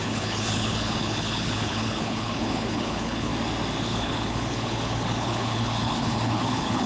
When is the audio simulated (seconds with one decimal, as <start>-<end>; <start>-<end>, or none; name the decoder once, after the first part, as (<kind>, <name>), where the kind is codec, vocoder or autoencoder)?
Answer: 0.0-3.3 (codec, HILCodec); 3.8-6.9